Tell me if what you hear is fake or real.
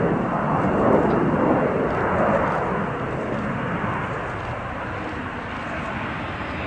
real